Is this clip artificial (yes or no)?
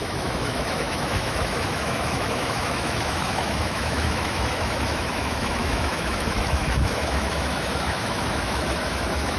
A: yes